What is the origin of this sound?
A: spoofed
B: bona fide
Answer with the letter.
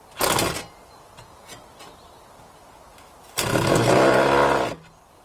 B